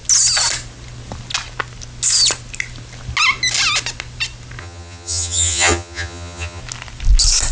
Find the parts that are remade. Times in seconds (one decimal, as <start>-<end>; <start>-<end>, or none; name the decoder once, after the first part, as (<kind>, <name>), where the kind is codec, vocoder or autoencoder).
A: 4.6-6.6 (vocoder, HiFi-GAN)